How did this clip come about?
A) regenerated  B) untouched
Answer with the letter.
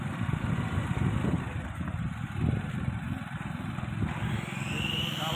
B